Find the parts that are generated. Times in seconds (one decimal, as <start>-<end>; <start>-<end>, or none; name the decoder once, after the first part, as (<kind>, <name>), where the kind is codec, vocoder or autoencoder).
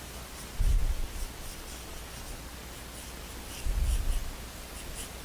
none